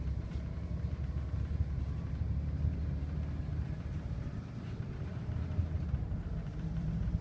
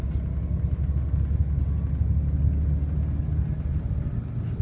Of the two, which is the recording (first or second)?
second